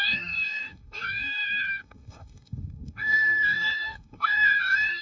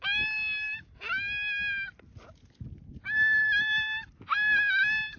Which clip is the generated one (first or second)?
first